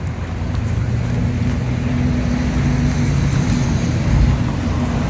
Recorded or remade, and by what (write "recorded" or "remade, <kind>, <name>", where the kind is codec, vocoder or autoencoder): recorded